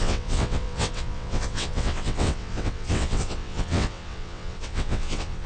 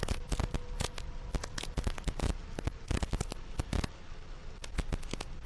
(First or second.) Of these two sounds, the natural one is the second